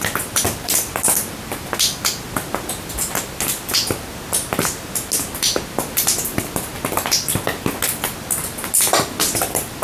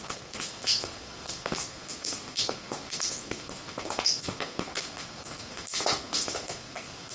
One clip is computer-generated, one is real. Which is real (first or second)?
first